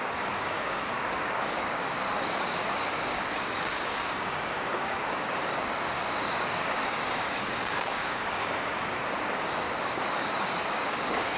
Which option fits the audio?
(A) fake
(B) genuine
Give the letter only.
A